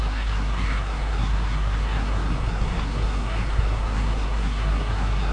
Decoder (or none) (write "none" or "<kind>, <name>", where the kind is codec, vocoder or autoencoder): codec, SNAC